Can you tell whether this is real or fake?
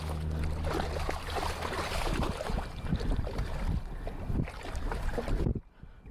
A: real